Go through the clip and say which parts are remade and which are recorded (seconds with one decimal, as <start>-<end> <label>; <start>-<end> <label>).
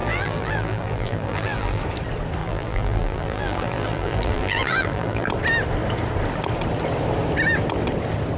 0.0-1.8 remade; 1.8-2.4 recorded; 2.4-5.3 remade; 5.3-8.4 recorded